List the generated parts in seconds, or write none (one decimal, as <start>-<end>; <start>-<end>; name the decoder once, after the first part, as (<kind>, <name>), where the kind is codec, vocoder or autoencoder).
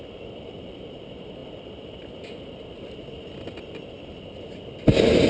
none